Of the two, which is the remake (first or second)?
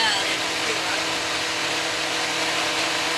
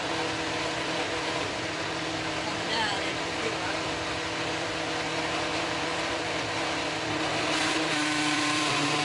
second